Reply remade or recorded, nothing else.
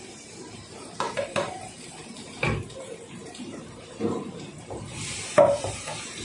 remade